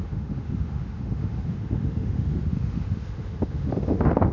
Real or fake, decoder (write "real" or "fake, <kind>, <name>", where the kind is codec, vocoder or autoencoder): fake, autoencoder, DAC-VAE